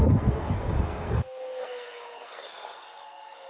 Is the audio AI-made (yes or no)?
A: yes